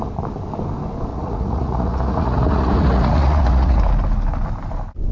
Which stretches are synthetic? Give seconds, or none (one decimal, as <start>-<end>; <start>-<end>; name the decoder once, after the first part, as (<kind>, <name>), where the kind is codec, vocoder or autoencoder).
1.1-3.8 (vocoder, Vocos)